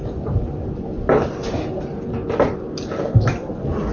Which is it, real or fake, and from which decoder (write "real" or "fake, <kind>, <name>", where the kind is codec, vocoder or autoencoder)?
real